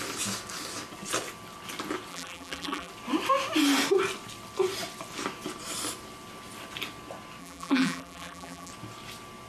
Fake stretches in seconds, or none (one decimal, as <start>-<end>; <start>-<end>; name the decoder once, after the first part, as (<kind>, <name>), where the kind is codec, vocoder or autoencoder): 2.1-2.9 (vocoder, BigVGAN v2); 7.4-8.7